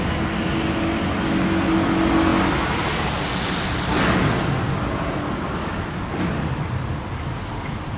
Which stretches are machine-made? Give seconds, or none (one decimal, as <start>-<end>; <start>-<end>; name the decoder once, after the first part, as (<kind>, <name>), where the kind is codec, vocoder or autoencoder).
none